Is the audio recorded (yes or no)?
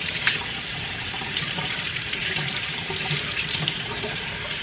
no